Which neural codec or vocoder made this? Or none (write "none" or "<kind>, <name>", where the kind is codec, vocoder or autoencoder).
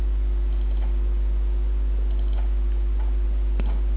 none